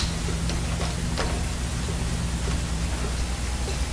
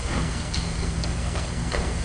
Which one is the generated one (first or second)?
second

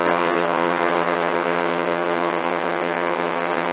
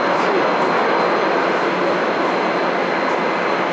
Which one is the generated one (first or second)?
first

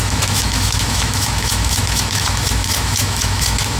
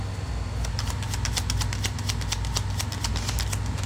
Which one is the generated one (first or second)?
first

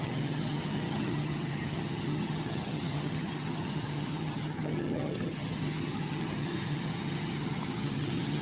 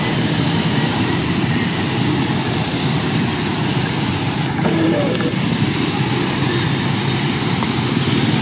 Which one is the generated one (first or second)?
first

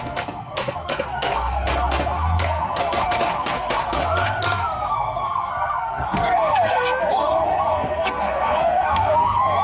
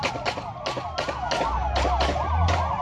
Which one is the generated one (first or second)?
first